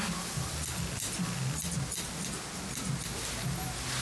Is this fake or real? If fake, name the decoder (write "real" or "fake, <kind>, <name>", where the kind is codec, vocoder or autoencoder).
real